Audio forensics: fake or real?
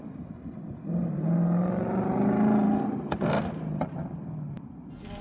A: real